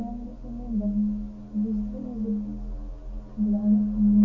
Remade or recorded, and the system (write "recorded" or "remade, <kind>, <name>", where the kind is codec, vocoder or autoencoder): recorded